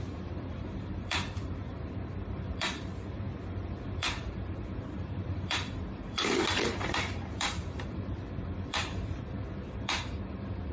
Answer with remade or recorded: remade